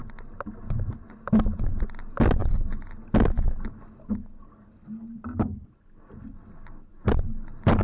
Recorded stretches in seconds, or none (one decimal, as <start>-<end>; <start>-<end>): 0.0-7.8